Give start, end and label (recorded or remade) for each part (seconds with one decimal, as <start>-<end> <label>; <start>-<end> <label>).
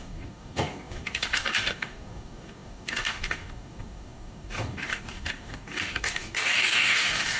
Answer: 0.0-7.4 remade